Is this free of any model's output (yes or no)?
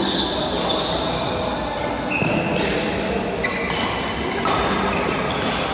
yes